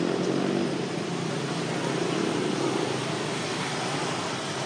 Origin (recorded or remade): recorded